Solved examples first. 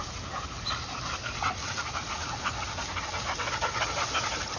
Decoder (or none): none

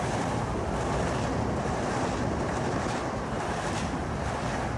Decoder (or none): none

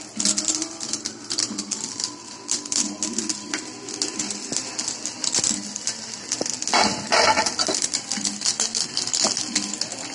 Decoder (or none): none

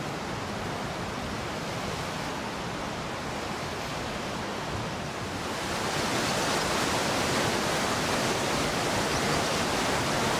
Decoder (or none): none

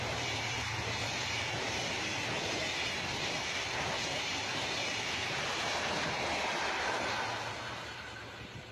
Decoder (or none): vocoder, BigVGAN v2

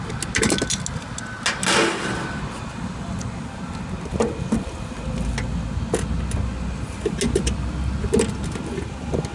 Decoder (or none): none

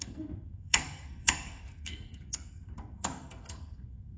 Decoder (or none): codec, SNAC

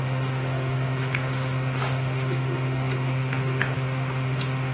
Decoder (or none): autoencoder, DAC-VAE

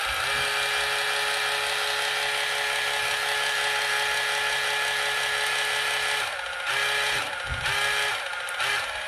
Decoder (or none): none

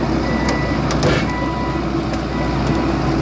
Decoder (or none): none